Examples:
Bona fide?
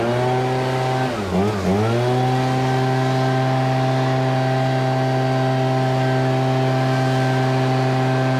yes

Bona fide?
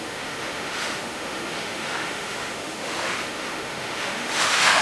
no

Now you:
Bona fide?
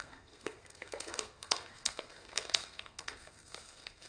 no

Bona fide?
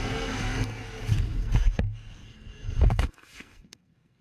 no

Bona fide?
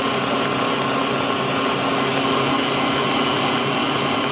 yes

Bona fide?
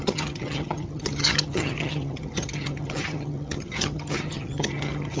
no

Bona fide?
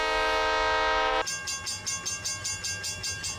yes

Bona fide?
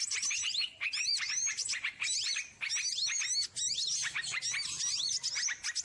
yes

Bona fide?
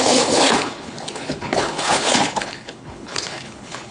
no